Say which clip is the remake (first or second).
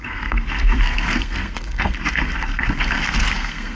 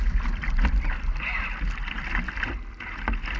first